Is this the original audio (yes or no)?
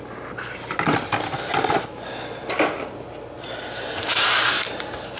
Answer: yes